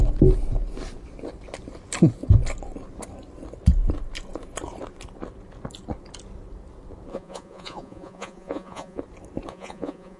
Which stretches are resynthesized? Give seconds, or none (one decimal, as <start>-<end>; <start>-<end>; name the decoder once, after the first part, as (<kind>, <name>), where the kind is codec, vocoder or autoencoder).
7.1-9.0 (vocoder, Vocos); 9.5-10.2